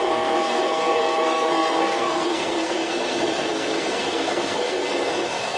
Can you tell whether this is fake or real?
fake